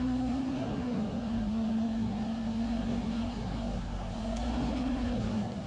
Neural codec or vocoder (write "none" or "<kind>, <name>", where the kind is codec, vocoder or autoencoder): codec, SNAC